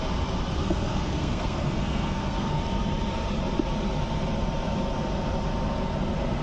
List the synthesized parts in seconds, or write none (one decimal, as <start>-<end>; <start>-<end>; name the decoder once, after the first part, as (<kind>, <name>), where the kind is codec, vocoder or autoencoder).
0.6-2.6 (codec, SNAC)